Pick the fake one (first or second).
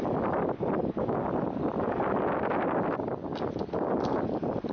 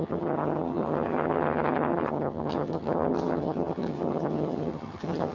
second